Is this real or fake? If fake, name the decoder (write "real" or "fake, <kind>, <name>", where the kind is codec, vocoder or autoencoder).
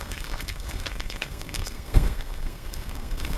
fake, codec, SNAC